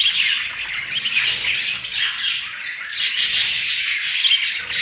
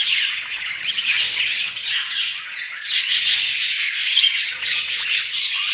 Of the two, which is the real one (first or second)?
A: first